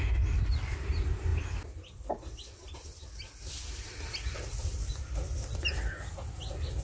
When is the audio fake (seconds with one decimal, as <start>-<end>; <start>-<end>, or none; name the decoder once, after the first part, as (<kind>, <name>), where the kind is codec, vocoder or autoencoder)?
none